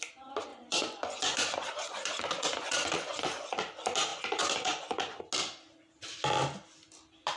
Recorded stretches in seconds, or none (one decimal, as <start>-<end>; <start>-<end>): 0.0-0.5; 3.2-4.1; 5.2-7.4